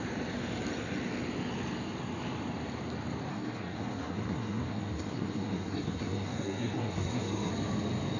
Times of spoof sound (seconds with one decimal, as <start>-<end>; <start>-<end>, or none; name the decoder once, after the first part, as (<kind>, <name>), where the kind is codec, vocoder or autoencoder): 3.3-7.5 (codec, SNAC)

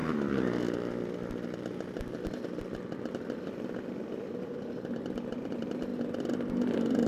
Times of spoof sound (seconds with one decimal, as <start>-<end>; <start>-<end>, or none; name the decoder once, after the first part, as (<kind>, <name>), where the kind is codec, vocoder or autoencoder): 4.3-5.9 (vocoder, BigVGAN v2); 6.5-7.1

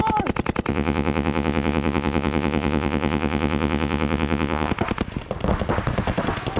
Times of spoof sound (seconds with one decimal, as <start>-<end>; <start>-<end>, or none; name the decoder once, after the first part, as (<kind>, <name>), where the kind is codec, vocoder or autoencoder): 0.7-4.7 (vocoder, Vocos)

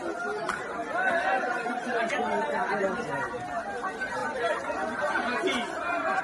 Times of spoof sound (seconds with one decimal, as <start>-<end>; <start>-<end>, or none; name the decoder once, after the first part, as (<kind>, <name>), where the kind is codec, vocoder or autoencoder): none

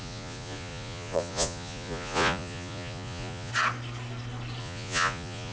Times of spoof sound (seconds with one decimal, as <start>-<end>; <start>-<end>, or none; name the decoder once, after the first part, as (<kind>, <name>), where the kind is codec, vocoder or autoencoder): 0.0-3.5 (vocoder, Vocos); 4.6-5.5

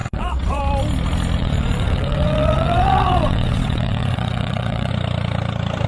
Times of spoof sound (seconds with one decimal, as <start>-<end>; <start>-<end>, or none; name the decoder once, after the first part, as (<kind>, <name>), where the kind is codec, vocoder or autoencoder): 0.0-0.6 (vocoder, WaveNeXt); 1.4-4.9